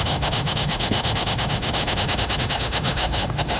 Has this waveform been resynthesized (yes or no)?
yes